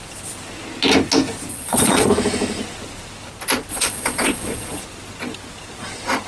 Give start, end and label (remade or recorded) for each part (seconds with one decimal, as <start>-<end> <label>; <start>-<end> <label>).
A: 0.0-1.5 recorded; 1.5-2.1 remade; 2.1-3.7 recorded; 3.7-4.8 remade; 4.8-6.3 recorded